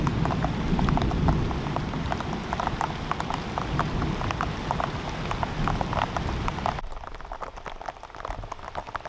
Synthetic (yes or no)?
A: no